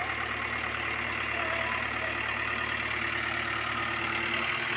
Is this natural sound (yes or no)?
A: yes